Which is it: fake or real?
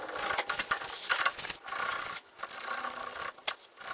fake